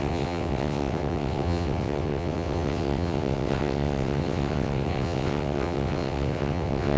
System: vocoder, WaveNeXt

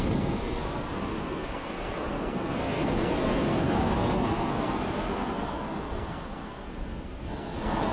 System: codec, SNAC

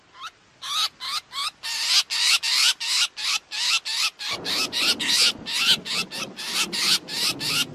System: none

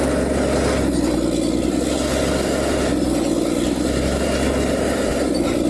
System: none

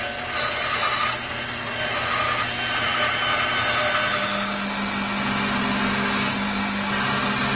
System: none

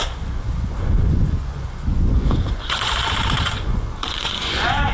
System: vocoder, Vocos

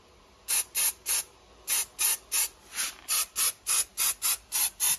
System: none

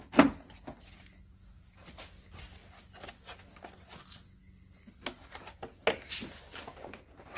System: none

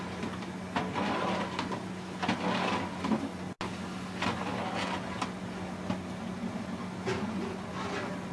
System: none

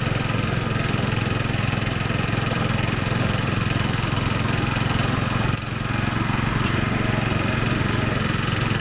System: none